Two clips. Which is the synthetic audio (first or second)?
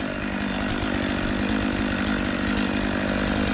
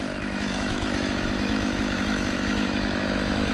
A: second